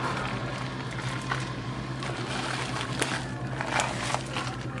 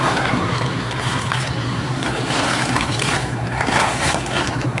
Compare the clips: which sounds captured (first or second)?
first